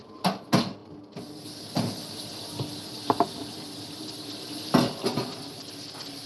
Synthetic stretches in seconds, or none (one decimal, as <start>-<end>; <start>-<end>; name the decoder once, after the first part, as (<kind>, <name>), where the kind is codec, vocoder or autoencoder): none